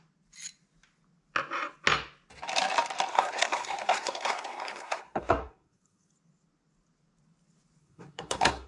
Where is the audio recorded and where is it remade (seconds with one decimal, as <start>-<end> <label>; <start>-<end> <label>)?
0.0-3.1 recorded; 3.1-6.1 remade; 6.1-7.8 recorded; 7.8-8.7 remade